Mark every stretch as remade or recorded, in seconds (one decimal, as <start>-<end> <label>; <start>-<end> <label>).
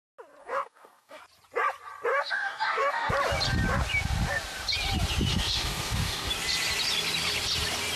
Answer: 0.0-0.4 recorded; 0.4-1.2 remade; 1.2-2.1 recorded; 2.1-3.1 remade; 3.1-5.3 recorded; 5.3-6.3 remade; 6.3-8.0 recorded